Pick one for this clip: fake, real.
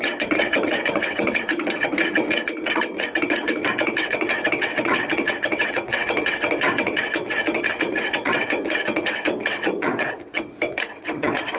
fake